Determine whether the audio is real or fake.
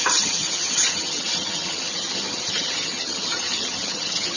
fake